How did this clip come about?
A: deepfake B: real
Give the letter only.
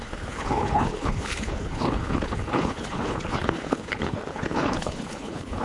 A